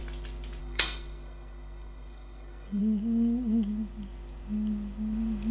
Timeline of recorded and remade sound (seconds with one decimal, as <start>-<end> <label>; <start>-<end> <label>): 0.0-0.6 recorded; 0.6-2.8 remade; 2.8-5.5 recorded

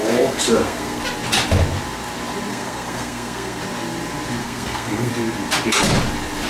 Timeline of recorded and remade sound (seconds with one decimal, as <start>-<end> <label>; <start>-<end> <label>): 0.0-1.0 remade; 1.0-2.5 recorded; 2.5-3.6 remade; 3.6-4.4 recorded; 4.4-5.1 remade; 5.1-6.5 recorded

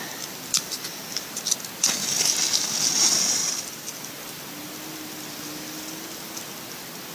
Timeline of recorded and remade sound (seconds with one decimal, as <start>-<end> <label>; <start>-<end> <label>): 0.0-3.4 recorded; 3.4-4.0 remade; 4.0-7.1 recorded

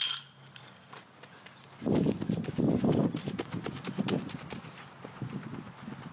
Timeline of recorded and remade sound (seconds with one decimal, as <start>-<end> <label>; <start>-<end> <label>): 0.0-6.1 recorded

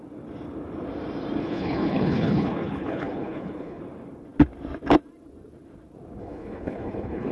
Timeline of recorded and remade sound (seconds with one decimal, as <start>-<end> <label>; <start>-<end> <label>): 0.0-1.4 recorded; 1.4-3.8 remade; 3.8-6.2 recorded; 6.2-7.3 remade

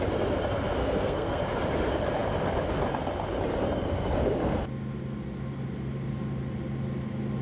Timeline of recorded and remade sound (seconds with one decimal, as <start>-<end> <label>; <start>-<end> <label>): 0.0-0.8 recorded; 0.8-1.4 remade; 1.4-7.4 recorded